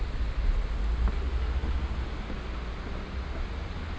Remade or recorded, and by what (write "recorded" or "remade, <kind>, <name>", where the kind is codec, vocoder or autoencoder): recorded